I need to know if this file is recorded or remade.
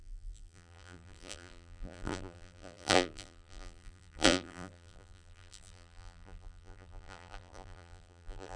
remade